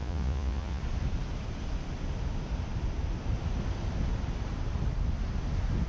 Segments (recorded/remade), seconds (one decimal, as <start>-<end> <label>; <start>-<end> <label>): 0.0-0.8 remade; 0.8-5.9 recorded